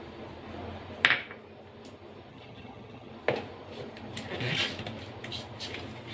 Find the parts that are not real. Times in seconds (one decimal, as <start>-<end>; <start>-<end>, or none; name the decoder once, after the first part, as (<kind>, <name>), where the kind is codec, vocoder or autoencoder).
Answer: 2.3-3.1 (vocoder, HiFi-GAN)